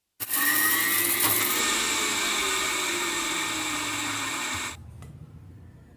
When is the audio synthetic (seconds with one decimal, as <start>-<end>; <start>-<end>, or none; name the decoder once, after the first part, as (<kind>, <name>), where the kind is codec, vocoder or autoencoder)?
2.4-6.0 (vocoder, BigVGAN v2)